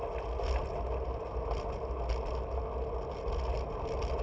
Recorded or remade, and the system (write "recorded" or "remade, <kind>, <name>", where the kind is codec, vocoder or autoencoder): recorded